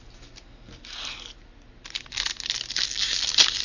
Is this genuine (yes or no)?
yes